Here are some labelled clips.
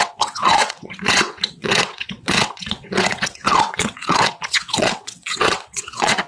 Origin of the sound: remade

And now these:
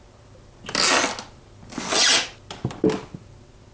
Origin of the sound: recorded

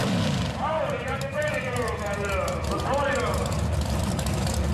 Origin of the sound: remade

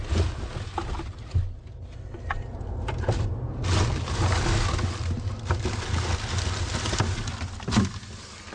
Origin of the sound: recorded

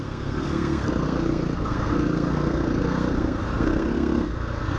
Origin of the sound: remade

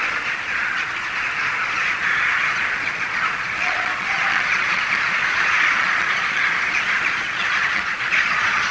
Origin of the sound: remade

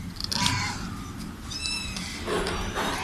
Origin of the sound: recorded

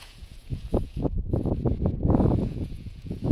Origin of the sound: remade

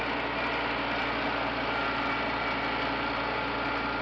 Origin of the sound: recorded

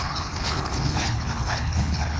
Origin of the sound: remade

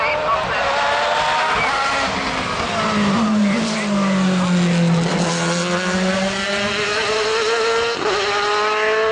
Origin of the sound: recorded